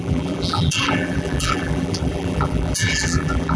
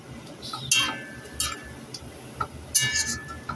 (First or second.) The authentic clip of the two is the second